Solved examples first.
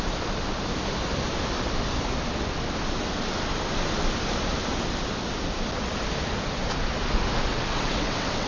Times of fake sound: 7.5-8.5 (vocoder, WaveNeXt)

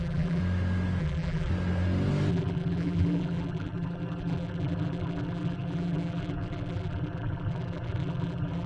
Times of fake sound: 0.0-0.4 (vocoder, BigVGAN v2); 1.0-1.5; 2.3-8.7

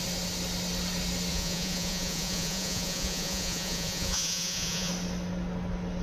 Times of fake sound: 1.3-4.9 (vocoder, Vocos)

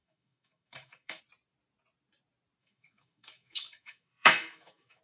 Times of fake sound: 0.0-1.2 (autoencoder, DAC-VAE); 2.6-5.0